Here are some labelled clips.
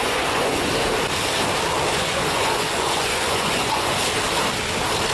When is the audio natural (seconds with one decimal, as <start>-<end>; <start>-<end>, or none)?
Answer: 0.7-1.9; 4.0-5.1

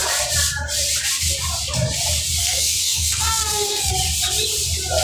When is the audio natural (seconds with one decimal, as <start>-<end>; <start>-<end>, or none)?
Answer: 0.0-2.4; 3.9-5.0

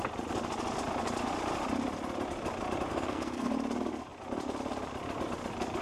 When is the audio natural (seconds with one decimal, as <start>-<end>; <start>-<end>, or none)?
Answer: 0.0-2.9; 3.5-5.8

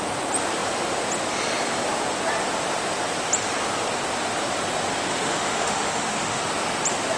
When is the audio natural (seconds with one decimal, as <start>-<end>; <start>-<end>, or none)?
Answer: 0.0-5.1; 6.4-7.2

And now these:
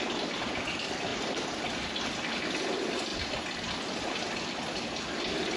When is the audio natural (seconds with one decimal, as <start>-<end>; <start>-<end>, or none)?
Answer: 0.0-1.1; 2.7-5.6

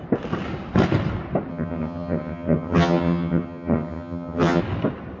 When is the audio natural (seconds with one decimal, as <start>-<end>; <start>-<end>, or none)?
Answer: 0.0-1.5; 4.6-5.2